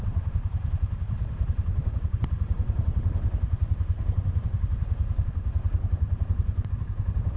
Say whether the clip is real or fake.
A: fake